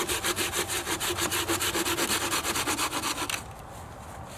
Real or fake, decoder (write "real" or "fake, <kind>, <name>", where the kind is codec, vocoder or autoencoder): real